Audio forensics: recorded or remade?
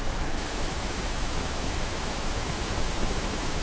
remade